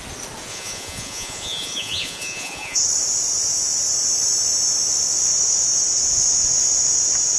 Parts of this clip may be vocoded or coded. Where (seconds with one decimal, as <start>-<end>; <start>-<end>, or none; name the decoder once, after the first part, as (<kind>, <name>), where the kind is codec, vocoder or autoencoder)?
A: 0.5-2.8 (vocoder, Vocos)